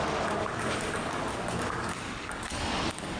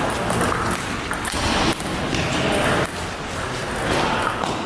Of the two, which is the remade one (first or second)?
first